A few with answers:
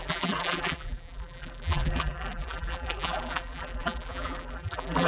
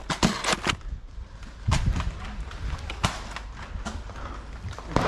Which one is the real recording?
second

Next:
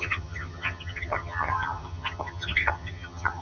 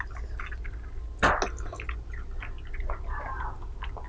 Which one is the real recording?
second